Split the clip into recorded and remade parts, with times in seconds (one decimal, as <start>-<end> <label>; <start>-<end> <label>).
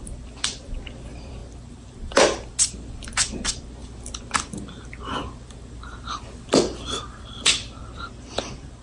0.0-1.4 remade; 1.4-2.6 recorded; 2.6-3.8 remade; 3.8-7.2 recorded; 7.2-8.8 remade